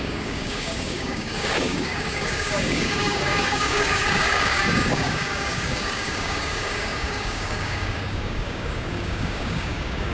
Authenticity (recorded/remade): remade